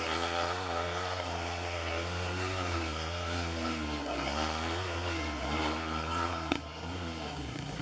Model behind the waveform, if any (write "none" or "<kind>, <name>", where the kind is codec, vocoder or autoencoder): codec, SNAC